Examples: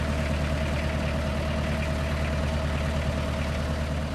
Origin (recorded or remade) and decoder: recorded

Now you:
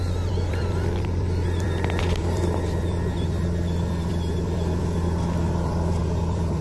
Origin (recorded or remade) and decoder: remade, vocoder, BigVGAN v2